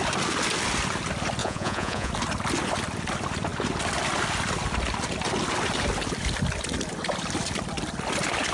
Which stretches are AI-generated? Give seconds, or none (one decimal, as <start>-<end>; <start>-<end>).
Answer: 1.4-2.1